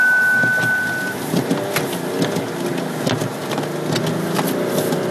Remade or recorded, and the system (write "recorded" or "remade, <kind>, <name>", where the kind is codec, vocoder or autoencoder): recorded